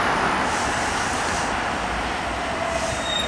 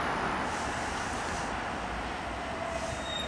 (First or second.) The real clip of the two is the second